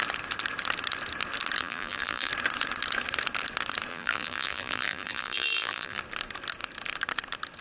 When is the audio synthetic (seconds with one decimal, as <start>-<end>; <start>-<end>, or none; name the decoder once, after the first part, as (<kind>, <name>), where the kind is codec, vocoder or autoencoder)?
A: 1.6-2.3 (vocoder, BigVGAN v2); 3.9-6.0